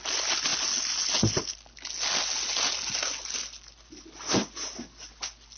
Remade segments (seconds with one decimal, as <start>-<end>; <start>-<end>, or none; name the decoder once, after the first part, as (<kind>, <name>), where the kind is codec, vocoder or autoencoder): none